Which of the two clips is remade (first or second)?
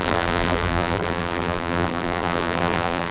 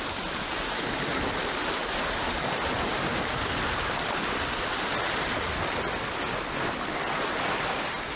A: first